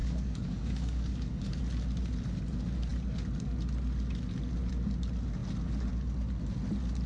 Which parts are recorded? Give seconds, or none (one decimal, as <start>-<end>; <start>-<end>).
1.6-7.1